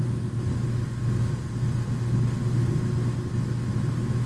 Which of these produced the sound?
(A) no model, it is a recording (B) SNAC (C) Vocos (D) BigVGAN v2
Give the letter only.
A